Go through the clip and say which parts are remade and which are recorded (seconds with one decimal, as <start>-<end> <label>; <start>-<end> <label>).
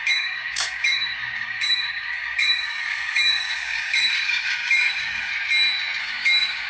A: 0.0-5.3 remade; 5.3-6.0 recorded; 6.0-6.7 remade